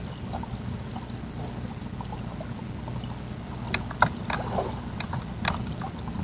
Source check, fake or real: real